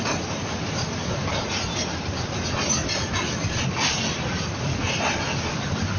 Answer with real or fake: real